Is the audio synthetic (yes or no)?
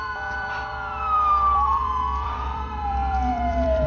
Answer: yes